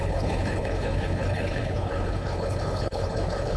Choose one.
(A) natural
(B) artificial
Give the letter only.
B